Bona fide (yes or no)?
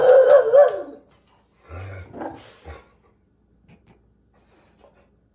yes